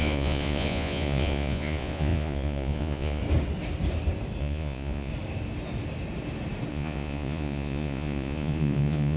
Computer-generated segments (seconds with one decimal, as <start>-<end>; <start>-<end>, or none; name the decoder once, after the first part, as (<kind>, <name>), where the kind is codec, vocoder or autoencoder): 0.0-3.2 (vocoder, Vocos); 4.4-5.1; 6.7-9.2